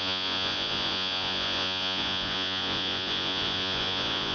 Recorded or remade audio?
remade